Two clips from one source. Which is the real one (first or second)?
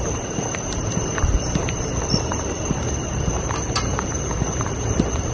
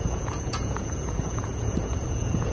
first